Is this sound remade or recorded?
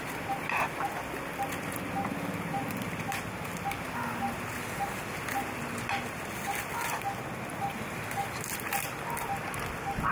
remade